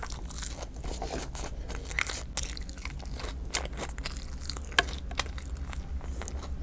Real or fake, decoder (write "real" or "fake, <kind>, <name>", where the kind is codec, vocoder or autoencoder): real